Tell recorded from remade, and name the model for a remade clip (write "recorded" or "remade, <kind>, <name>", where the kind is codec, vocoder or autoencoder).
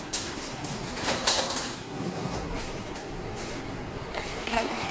remade, codec, SNAC